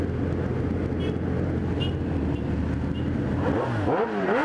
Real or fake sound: real